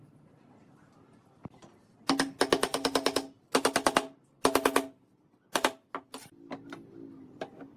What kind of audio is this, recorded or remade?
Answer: recorded